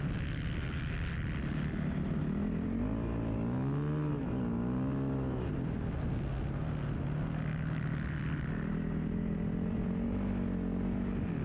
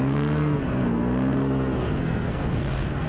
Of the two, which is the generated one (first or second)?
second